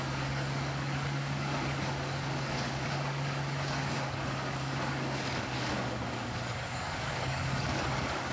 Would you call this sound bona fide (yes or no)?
no